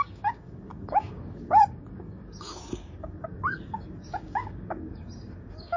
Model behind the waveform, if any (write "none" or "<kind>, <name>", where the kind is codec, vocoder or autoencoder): codec, DAC